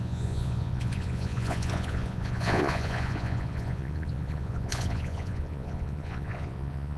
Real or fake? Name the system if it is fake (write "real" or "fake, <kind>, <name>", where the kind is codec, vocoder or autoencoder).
fake, vocoder, Vocos